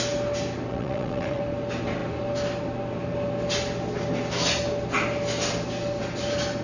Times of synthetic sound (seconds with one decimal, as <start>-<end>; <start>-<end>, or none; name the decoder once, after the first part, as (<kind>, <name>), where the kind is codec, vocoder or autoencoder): 0.7-1.4 (vocoder, WaveNeXt)